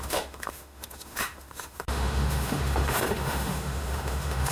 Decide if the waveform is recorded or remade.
remade